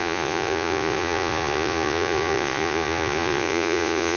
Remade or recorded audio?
remade